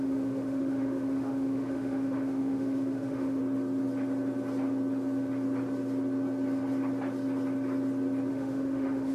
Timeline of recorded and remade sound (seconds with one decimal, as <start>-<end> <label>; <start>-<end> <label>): 0.0-3.4 remade; 3.4-8.3 recorded; 8.3-9.1 remade